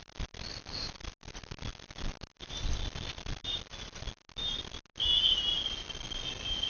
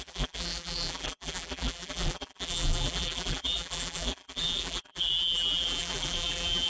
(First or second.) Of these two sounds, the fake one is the second